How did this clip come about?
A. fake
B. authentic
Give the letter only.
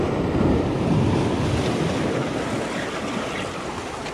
B